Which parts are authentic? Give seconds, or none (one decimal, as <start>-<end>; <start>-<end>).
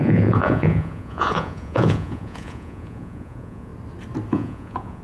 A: 3.7-4.3